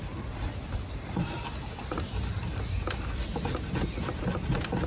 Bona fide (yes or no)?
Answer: yes